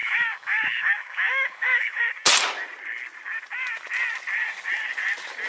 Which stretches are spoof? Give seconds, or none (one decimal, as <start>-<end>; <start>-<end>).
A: 0.0-2.0